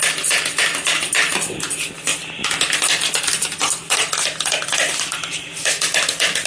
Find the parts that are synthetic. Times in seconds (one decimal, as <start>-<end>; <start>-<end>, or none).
none